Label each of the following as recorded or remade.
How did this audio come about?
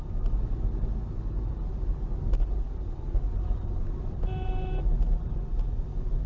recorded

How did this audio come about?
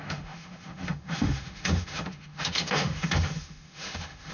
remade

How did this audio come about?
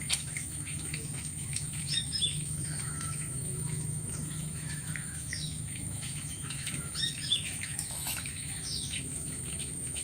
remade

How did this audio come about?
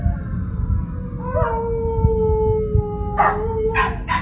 recorded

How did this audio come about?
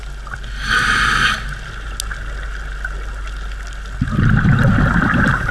recorded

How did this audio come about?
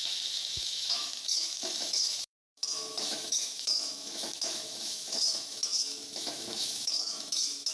remade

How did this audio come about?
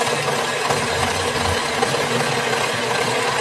recorded